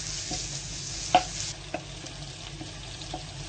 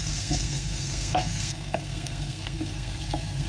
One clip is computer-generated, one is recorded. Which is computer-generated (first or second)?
second